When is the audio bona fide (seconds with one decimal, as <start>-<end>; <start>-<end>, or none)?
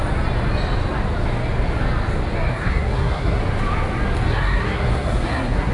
0.0-2.5; 3.4-4.3